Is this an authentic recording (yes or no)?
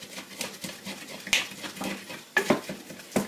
yes